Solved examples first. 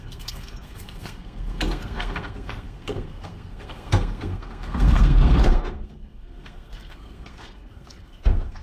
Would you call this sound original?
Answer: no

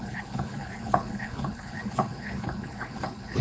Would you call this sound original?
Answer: no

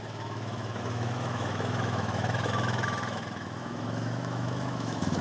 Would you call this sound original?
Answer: no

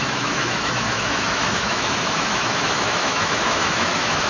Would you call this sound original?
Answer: no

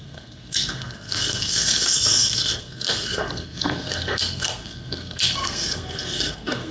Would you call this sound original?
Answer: no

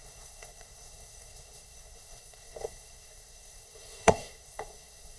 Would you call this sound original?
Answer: no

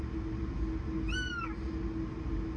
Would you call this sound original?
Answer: yes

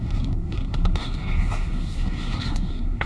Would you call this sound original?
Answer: no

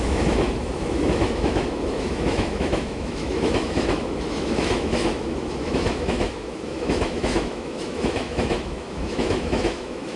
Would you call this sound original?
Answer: no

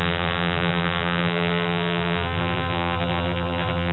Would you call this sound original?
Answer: no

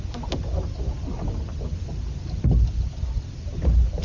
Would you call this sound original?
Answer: yes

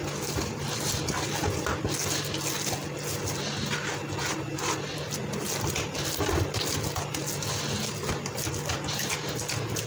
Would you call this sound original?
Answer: yes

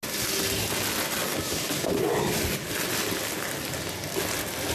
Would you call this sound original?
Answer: yes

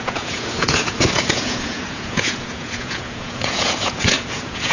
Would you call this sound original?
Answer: no